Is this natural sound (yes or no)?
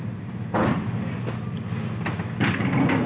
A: yes